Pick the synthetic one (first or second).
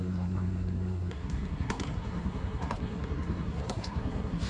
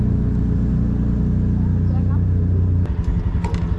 first